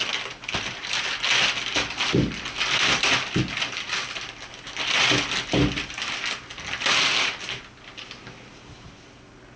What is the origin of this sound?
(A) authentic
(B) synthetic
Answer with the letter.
A